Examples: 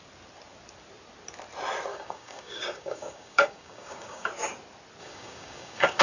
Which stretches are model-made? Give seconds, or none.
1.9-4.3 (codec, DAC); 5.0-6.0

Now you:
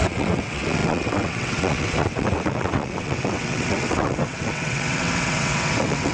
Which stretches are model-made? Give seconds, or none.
0.0-6.1 (vocoder, WaveNeXt)

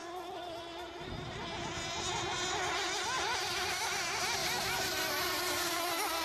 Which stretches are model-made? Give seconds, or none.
4.4-5.8 (vocoder, BigVGAN v2)

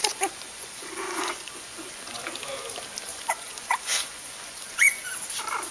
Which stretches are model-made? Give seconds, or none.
0.0-2.2 (vocoder, Vocos); 3.1-5.1